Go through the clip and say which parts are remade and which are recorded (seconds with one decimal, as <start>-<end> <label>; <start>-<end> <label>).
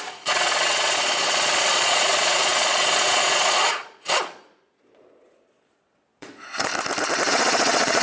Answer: 0.0-6.7 remade; 6.7-7.3 recorded; 7.3-8.0 remade